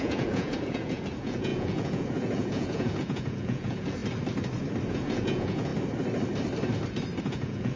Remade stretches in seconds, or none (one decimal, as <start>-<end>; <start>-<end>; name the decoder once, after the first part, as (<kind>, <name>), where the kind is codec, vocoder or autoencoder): 0.0-4.0 (vocoder, Vocos); 4.9-5.7; 7.2-7.8

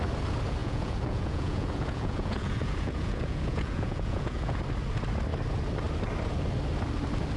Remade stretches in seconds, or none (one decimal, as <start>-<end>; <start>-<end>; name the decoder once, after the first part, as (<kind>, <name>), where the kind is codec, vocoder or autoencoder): 0.6-4.5 (vocoder, Vocos)